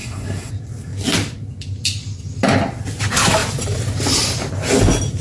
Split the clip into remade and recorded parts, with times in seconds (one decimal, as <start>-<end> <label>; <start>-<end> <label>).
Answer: 0.0-0.5 remade; 0.5-5.2 recorded